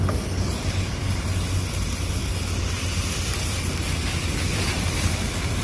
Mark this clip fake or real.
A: real